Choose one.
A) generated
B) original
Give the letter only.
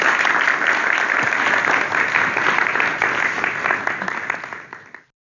B